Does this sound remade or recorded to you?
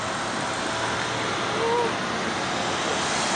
recorded